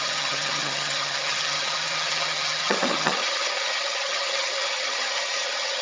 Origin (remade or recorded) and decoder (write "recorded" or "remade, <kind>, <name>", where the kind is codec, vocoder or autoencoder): remade, vocoder, HiFi-GAN